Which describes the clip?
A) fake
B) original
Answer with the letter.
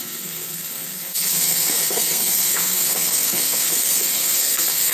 A